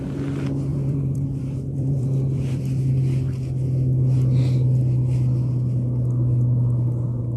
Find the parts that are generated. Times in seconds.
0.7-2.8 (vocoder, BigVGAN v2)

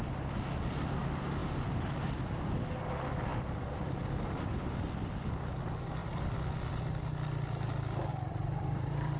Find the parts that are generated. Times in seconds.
3.3-4.7 (vocoder, BigVGAN v2); 6.0-6.8; 8.1-9.2

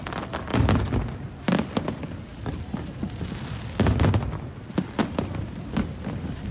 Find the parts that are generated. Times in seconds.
0.0-0.5 (vocoder, BigVGAN v2); 1.4-2.3; 5.4-6.5

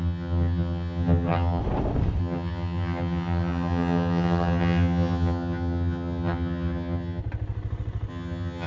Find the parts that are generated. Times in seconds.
0.0-1.6 (vocoder, HiFi-GAN); 2.2-7.2; 8.1-8.7

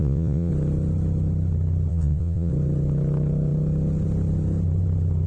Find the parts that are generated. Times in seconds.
0.0-0.5 (vocoder, Vocos); 1.9-2.5